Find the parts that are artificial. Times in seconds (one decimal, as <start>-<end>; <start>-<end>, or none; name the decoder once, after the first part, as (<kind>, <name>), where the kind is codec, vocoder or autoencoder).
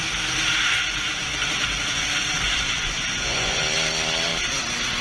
0.6-3.6 (vocoder, Vocos)